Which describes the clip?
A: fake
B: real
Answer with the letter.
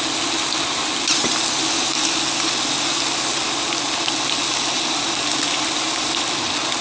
B